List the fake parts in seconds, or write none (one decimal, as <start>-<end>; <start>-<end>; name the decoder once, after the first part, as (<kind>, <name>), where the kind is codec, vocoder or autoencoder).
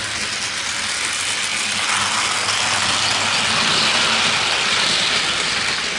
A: none